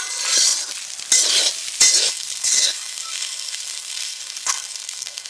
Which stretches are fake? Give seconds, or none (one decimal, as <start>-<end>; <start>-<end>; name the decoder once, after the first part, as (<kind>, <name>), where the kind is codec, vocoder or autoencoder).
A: 2.0-5.3 (codec, SNAC)